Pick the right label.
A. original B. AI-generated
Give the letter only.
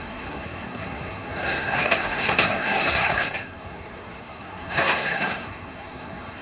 B